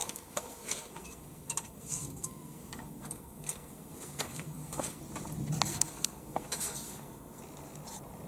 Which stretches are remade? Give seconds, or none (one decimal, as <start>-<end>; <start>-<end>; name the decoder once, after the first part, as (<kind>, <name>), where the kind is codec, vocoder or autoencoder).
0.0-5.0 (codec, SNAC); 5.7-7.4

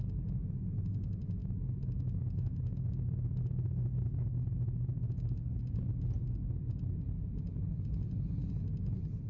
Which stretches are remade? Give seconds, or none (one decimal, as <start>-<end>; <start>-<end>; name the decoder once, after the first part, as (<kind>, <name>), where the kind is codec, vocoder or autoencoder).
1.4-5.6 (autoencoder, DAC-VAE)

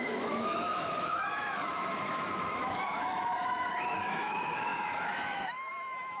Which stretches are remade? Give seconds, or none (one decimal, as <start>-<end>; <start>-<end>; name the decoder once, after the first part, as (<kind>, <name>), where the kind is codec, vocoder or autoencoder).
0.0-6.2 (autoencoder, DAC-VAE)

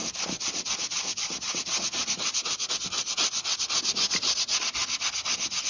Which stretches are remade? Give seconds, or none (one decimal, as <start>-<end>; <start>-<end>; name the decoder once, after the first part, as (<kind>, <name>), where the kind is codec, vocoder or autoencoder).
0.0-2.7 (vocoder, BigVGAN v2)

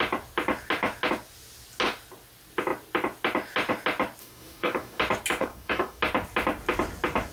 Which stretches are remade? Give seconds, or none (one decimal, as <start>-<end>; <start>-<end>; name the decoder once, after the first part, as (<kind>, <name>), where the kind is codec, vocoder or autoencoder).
4.2-5.0 (codec, DAC); 5.4-6.0

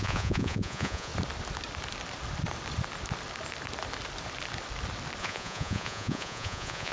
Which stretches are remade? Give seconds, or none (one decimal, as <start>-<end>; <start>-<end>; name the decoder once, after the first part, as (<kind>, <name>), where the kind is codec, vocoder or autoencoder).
0.0-1.1 (vocoder, Vocos); 5.2-6.9

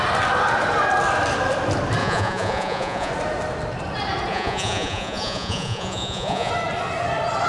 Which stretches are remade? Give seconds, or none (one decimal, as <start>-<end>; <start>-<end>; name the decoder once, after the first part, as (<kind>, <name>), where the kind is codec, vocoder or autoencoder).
2.0-3.1 (vocoder, Vocos); 4.3-6.5